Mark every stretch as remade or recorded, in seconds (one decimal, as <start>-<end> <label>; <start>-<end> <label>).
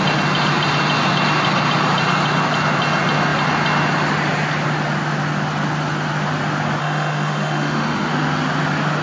0.0-6.8 recorded; 6.8-8.1 remade; 8.1-9.0 recorded